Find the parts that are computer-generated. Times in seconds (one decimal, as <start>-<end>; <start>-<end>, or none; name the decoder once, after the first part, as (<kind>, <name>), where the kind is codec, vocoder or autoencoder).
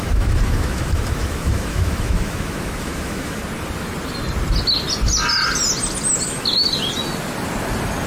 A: 0.0-3.4 (autoencoder, DAC-VAE)